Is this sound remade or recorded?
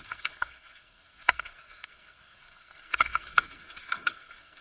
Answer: remade